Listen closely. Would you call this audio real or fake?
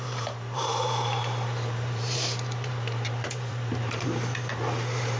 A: fake